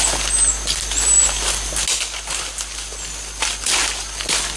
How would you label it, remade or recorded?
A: recorded